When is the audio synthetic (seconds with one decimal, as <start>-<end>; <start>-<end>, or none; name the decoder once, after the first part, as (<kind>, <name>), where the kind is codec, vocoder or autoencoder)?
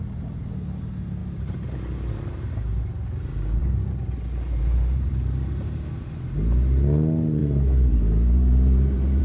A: 3.6-5.1 (vocoder, BigVGAN v2); 7.4-9.2